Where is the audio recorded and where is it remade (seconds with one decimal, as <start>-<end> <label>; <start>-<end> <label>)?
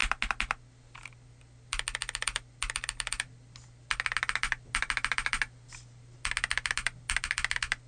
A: 0.0-7.9 recorded